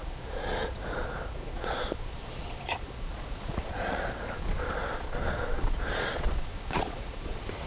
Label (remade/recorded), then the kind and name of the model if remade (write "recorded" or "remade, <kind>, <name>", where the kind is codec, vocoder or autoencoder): remade, vocoder, Vocos